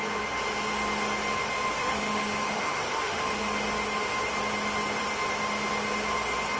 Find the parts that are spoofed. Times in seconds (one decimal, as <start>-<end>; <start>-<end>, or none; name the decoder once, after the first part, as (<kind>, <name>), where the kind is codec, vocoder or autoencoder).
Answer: 1.7-3.5 (autoencoder, DAC-VAE)